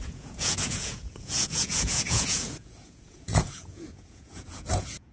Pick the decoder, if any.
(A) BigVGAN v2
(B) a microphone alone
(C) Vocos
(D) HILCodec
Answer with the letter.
C